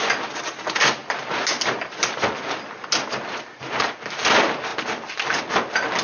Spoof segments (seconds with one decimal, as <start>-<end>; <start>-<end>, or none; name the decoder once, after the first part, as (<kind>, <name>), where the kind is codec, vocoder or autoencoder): none